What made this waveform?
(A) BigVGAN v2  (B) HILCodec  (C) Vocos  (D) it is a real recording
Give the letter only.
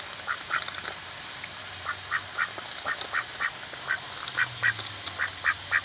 D